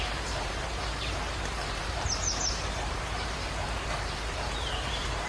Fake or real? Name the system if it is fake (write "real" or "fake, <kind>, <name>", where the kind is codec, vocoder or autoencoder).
fake, vocoder, BigVGAN v2